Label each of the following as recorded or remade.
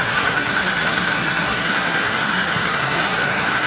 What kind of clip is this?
remade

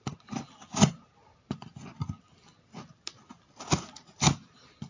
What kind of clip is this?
recorded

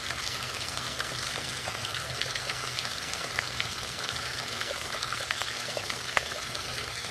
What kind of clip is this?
remade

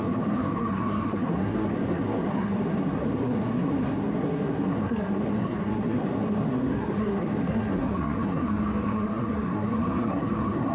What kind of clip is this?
remade